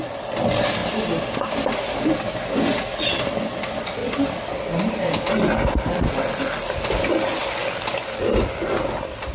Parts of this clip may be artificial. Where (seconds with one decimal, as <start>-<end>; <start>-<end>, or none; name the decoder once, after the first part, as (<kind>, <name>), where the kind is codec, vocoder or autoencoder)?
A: none